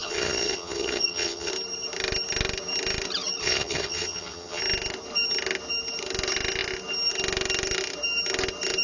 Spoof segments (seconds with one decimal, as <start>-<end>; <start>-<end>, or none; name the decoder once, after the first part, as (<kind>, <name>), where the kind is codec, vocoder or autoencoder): 0.0-1.5 (vocoder, HiFi-GAN); 3.4-4.6